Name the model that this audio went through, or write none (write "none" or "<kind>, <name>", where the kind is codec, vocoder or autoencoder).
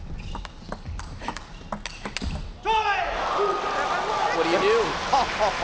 none